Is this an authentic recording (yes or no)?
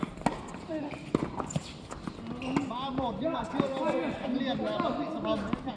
yes